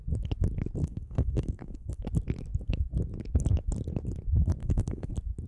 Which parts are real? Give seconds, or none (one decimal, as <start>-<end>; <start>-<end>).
0.0-0.8; 2.0-4.6; 5.1-5.5